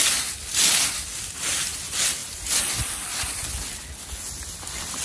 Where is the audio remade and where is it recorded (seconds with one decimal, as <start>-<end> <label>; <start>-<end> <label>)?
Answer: 0.0-5.0 recorded

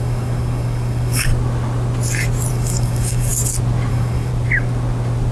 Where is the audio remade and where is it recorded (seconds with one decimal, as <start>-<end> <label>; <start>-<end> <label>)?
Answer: 0.0-1.3 remade; 1.3-2.5 recorded; 2.5-3.3 remade; 3.3-3.9 recorded; 3.9-4.3 remade; 4.3-5.3 recorded

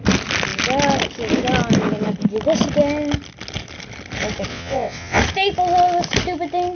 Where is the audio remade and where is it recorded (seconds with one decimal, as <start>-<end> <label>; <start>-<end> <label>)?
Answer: 0.0-4.5 recorded; 4.5-5.2 remade; 5.2-6.7 recorded

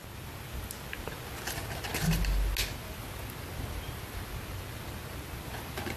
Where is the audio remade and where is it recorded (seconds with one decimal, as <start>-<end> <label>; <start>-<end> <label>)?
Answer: 0.0-6.0 recorded